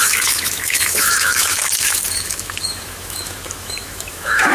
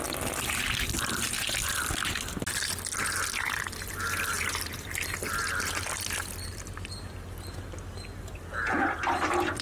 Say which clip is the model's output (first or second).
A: first